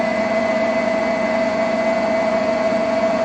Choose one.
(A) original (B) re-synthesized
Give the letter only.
B